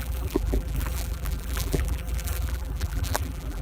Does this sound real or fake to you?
fake